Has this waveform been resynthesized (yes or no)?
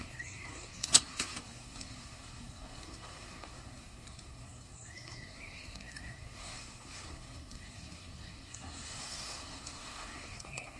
yes